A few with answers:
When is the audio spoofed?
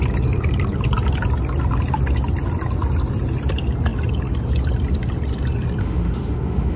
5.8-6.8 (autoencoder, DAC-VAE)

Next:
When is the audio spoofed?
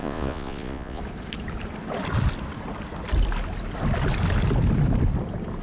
0.0-1.0 (vocoder, Vocos)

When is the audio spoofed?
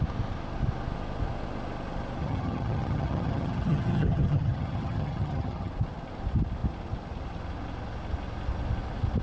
2.2-5.7 (vocoder, HiFi-GAN)